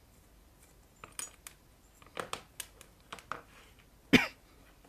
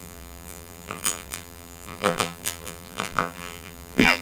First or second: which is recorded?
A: first